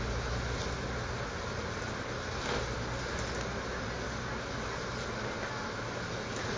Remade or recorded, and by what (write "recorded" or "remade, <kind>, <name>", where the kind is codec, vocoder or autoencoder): recorded